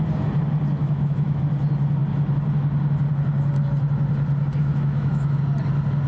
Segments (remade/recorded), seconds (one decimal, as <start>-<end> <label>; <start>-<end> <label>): 0.0-0.8 recorded; 0.8-1.4 remade; 1.4-4.6 recorded; 4.6-5.4 remade; 5.4-6.1 recorded